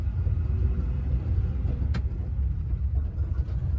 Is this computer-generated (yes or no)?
no